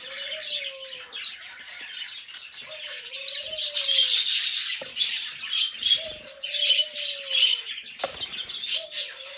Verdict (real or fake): real